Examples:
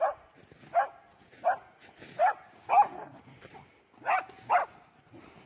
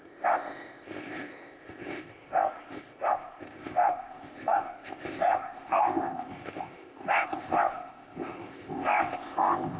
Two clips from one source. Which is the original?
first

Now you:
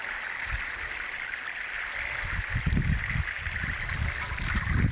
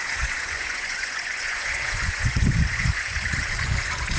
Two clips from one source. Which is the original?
first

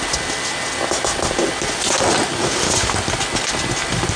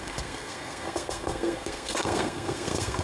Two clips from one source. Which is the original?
first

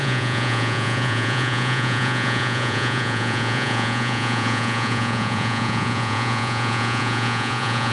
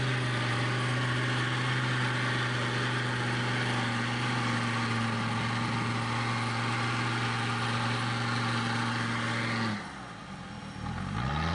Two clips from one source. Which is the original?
second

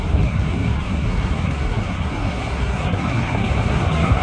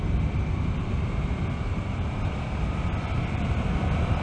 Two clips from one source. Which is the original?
second